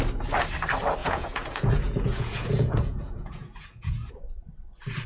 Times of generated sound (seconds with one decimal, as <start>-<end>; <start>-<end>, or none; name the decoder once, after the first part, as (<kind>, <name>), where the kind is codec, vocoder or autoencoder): 1.0-4.1 (vocoder, Vocos)